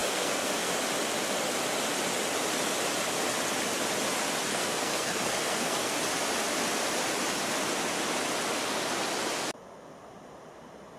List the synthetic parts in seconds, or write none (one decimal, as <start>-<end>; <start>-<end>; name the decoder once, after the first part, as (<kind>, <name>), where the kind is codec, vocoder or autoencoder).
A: 0.0-0.7 (codec, SNAC); 4.5-6.0